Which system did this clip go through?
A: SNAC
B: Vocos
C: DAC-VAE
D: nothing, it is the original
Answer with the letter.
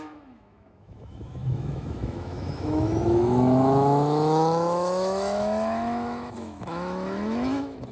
C